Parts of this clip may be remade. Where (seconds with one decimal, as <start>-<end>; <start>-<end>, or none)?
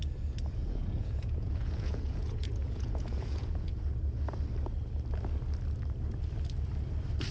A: 0.6-3.7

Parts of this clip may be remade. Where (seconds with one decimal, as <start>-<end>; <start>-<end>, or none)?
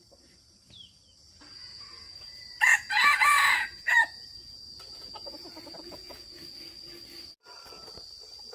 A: 1.6-6.4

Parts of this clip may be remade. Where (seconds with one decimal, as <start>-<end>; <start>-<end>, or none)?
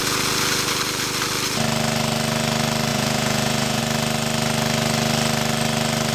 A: 2.9-3.8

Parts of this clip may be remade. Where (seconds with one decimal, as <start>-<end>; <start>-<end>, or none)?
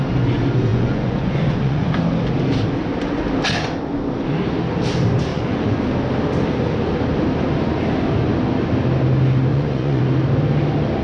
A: 0.7-2.0; 5.3-5.8; 9.5-10.0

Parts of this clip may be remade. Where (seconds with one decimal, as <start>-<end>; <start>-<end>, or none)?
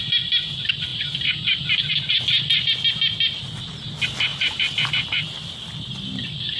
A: none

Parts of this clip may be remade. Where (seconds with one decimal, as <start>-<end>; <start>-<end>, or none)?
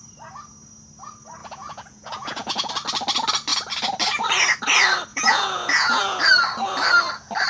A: 1.4-2.7; 5.1-6.2